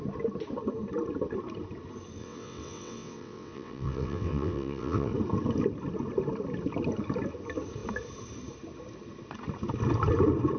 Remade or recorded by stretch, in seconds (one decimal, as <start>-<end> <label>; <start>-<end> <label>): 0.0-2.2 recorded; 2.2-5.1 remade; 5.1-10.6 recorded